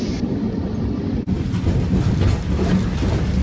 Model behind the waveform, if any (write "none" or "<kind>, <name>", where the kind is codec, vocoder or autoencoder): none